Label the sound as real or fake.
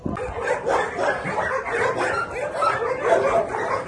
real